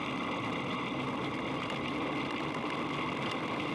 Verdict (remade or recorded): recorded